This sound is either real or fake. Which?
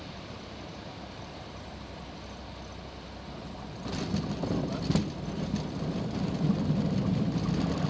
real